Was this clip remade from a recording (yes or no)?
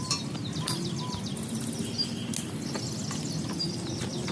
no